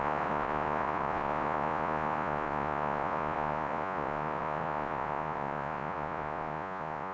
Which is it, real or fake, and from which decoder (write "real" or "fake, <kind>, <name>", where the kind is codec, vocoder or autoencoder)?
fake, vocoder, Vocos